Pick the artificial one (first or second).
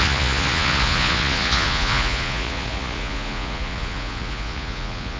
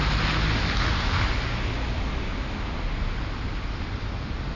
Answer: first